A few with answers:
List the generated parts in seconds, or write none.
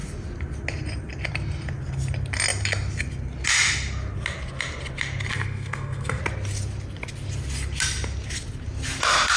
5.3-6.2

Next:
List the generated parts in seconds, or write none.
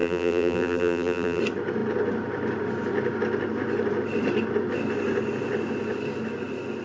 0.0-1.4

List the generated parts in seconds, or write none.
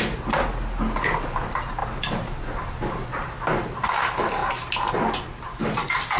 none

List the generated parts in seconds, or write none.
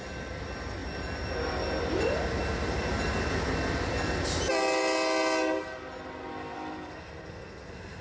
6.3-8.0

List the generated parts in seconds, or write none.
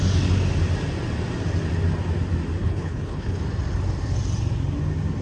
2.6-3.4